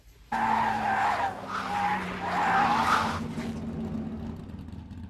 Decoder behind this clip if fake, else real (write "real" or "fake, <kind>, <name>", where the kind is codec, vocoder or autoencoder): real